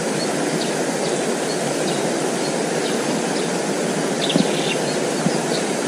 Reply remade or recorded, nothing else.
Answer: recorded